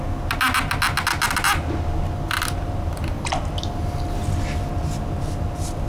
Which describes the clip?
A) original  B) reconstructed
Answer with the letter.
A